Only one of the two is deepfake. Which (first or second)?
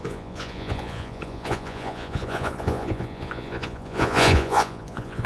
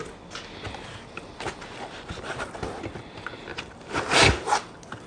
first